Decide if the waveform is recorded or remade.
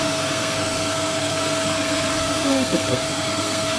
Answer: remade